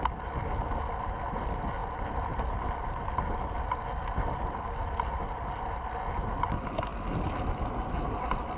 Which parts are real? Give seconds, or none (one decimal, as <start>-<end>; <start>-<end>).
0.0-8.6